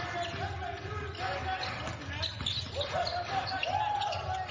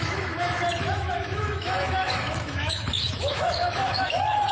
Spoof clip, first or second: second